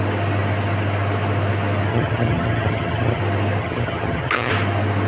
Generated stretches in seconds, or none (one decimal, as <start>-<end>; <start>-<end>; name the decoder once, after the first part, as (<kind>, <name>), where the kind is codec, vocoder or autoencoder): 1.9-3.2 (vocoder, HiFi-GAN); 3.6-4.5